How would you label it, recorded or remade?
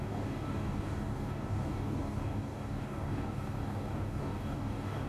remade